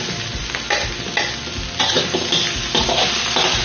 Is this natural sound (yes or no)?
yes